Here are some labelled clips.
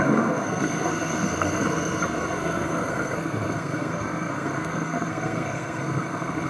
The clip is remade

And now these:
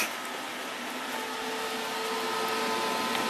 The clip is recorded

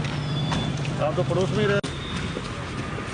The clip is recorded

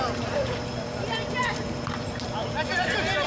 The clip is remade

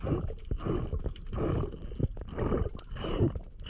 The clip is recorded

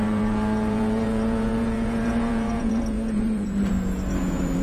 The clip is remade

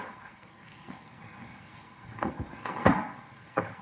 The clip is remade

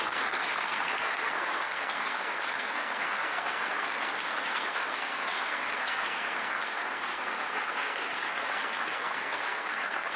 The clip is remade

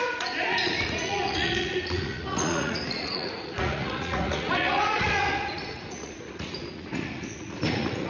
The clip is remade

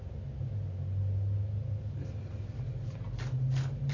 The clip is recorded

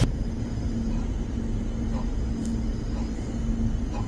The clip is recorded